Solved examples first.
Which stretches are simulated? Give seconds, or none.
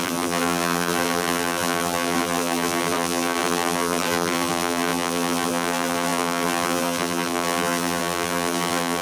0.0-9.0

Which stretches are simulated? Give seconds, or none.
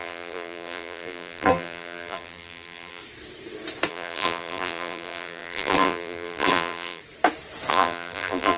0.0-3.0; 3.9-7.0; 7.7-8.6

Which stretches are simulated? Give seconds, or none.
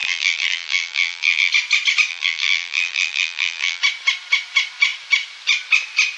0.0-1.5; 2.1-3.8